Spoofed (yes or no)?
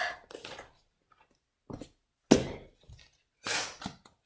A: no